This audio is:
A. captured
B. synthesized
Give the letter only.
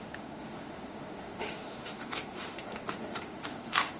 B